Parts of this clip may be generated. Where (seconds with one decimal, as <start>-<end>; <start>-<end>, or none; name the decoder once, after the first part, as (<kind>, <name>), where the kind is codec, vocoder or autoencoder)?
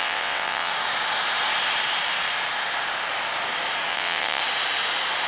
0.0-0.7 (vocoder, WaveNeXt); 3.9-4.4